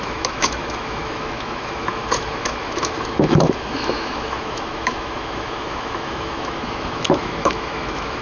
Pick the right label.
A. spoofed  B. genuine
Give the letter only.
A